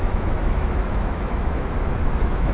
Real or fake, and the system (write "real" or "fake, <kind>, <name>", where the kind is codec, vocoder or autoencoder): fake, autoencoder, DAC-VAE